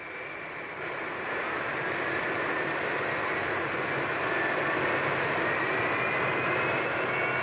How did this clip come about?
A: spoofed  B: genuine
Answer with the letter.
B